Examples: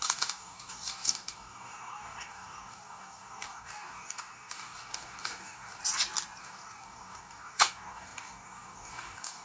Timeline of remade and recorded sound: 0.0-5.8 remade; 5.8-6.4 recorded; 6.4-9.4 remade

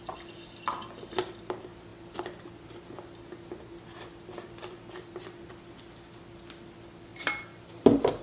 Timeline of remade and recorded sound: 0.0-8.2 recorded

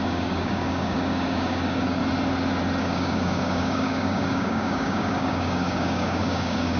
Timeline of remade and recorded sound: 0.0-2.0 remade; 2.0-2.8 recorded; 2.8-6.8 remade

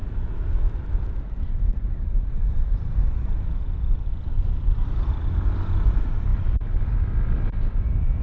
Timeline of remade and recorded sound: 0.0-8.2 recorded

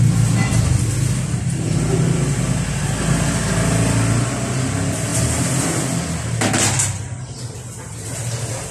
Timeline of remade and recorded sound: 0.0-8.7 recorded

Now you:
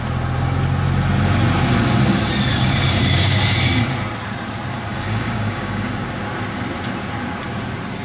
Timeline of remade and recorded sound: 0.0-2.5 recorded; 2.5-3.4 remade; 3.4-4.9 recorded; 4.9-6.1 remade; 6.1-8.0 recorded

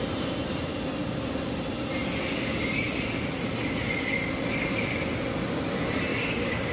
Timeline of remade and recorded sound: 0.0-6.1 recorded; 6.1-6.7 remade